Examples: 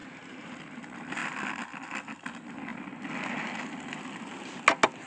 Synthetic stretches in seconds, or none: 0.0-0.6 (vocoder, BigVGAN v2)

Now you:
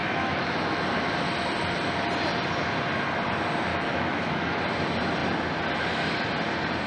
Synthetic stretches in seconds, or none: 0.0-0.8 (autoencoder, DAC-VAE); 3.7-4.6

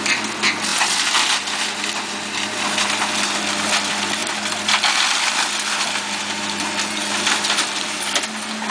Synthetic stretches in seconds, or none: none

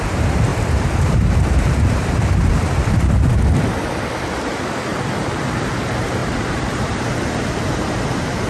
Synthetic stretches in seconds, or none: 0.5-3.3 (vocoder, BigVGAN v2); 4.9-5.7; 6.2-7.0

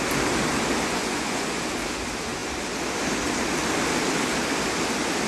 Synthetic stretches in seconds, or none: 0.9-1.6 (vocoder, Vocos)